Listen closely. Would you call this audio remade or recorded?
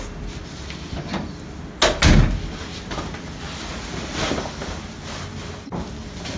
recorded